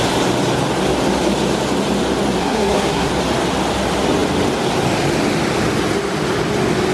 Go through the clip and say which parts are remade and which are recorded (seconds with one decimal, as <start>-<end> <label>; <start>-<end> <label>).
0.0-2.4 recorded; 2.4-3.1 remade; 3.1-6.9 recorded